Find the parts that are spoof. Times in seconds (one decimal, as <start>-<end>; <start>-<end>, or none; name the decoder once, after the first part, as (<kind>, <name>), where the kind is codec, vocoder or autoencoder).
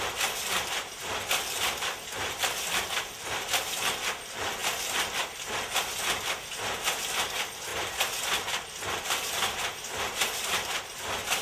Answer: none